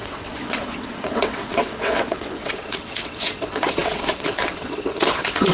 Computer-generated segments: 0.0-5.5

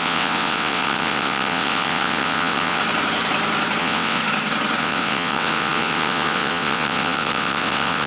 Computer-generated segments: 0.0-2.8; 3.8-4.2; 4.8-8.1

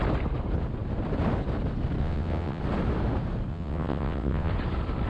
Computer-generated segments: 2.0-2.6; 3.5-4.5

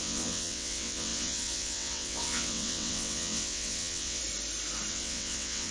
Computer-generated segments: 0.0-4.2; 4.9-5.7

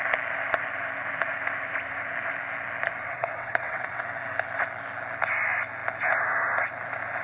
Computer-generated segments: 3.0-4.0

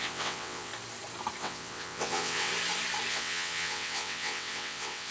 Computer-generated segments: 0.0-0.7; 1.4-2.5; 3.1-5.1